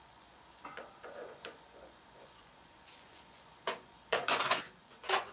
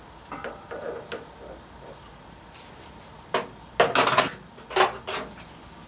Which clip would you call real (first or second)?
second